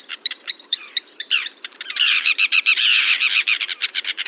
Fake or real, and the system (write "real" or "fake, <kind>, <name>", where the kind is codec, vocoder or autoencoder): fake, vocoder, BigVGAN v2